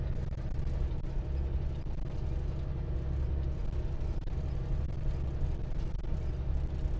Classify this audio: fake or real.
real